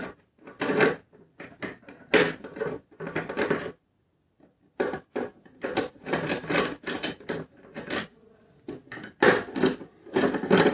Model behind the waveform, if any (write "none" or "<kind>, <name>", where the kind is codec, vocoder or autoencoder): none